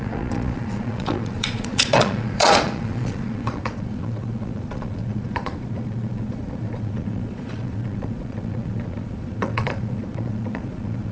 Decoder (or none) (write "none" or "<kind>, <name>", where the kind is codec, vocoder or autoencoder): vocoder, Vocos